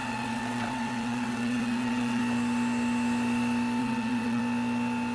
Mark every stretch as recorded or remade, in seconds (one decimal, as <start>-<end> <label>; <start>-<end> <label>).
0.0-2.2 remade; 2.2-3.8 recorded; 3.8-4.4 remade; 4.4-5.1 recorded